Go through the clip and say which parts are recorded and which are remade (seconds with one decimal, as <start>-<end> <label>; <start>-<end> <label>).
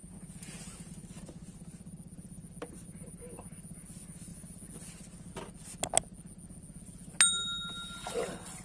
0.0-0.9 remade; 0.9-8.6 recorded